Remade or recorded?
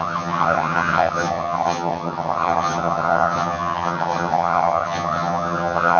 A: remade